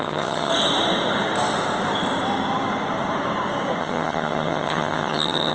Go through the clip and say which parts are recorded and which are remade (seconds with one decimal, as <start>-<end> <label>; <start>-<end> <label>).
0.0-0.5 remade; 0.5-3.8 recorded; 3.8-5.5 remade